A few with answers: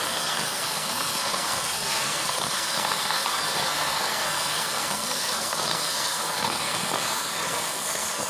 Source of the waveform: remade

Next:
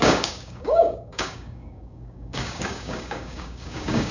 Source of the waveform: remade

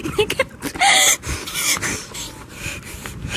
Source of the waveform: recorded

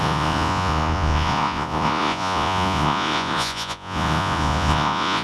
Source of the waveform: remade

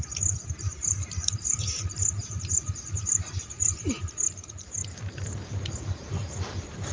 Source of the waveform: remade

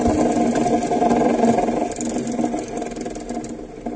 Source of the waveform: recorded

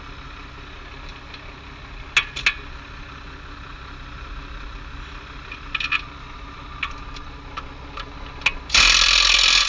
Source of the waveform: recorded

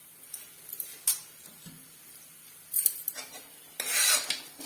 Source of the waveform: recorded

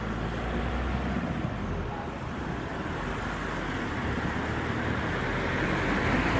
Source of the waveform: recorded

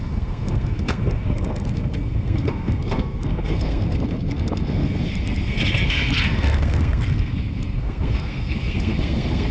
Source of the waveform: remade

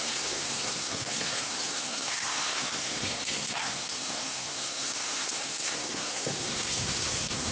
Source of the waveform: remade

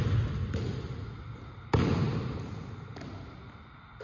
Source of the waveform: recorded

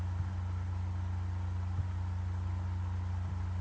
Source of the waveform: recorded